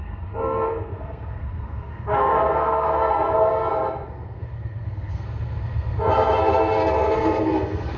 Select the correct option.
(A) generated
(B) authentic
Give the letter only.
A